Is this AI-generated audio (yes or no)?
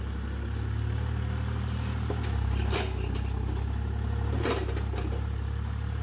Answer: no